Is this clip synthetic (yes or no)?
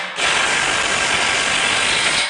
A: no